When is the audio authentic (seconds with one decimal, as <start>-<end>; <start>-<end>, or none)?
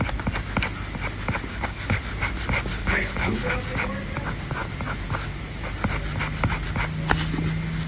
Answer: 0.0-1.5; 2.0-2.8; 3.5-7.9